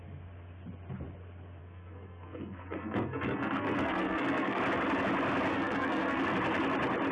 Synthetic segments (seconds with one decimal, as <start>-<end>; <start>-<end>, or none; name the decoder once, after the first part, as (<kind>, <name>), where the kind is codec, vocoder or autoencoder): 1.6-4.6 (codec, SNAC); 5.5-6.2